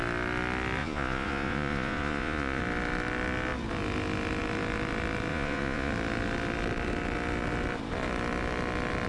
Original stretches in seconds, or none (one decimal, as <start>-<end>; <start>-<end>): 0.0-0.8; 2.6-5.3; 5.9-9.1